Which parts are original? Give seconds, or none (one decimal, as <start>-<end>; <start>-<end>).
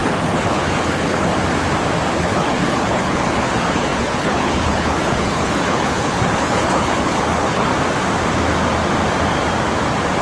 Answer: 1.3-2.1; 7.7-10.2